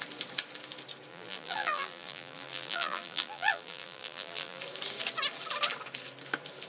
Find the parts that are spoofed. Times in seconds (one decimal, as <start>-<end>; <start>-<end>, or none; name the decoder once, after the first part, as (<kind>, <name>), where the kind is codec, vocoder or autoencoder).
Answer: 1.1-4.6 (vocoder, BigVGAN v2)